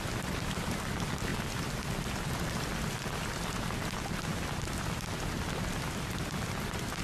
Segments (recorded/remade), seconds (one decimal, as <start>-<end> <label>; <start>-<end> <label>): 0.0-7.0 recorded